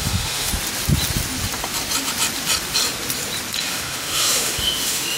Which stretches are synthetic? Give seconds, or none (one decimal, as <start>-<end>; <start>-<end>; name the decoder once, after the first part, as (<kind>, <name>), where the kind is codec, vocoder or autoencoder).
0.0-0.5 (autoencoder, DAC-VAE); 3.6-5.2